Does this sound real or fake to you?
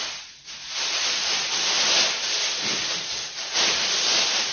real